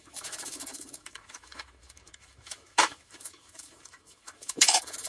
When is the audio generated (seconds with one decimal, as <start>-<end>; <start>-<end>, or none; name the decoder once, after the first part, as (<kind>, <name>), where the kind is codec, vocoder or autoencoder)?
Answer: 0.0-5.1 (autoencoder, DAC-VAE)